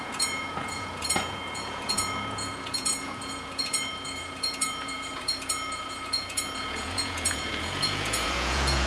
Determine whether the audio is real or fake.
fake